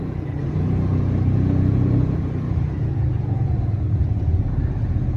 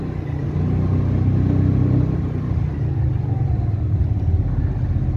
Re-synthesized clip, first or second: first